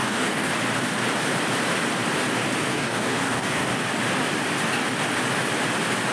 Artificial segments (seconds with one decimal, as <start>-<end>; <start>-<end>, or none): 0.0-0.5; 2.7-3.8